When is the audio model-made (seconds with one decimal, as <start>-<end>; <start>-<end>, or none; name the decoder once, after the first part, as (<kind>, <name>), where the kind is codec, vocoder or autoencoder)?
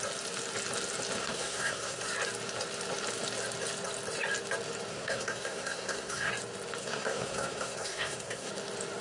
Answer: 1.2-2.0 (codec, SNAC); 4.9-6.3; 6.8-8.5